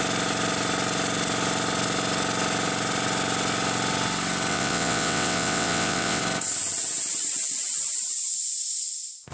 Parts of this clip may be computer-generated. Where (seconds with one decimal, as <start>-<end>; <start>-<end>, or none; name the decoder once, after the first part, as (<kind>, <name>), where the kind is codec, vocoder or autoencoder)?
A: 4.5-6.2 (vocoder, WaveNeXt)